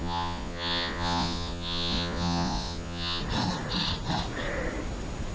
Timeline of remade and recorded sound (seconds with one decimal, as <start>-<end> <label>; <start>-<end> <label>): 0.0-3.2 remade; 3.2-5.3 recorded